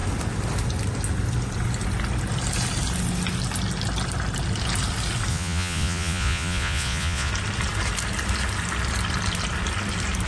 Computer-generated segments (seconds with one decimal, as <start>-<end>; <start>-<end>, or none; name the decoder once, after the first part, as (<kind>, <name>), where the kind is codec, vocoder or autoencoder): 5.3-7.3 (vocoder, Vocos)